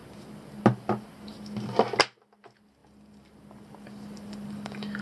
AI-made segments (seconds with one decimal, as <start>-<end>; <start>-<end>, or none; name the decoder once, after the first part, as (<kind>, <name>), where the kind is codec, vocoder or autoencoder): 0.0-0.6 (vocoder, BigVGAN v2); 2.8-5.0